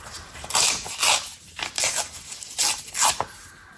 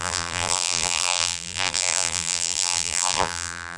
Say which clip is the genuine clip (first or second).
first